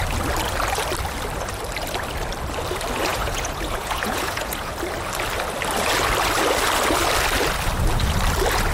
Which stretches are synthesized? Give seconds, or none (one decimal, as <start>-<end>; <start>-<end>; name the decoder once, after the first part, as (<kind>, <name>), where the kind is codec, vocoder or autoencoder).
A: 3.1-4.7 (vocoder, Vocos)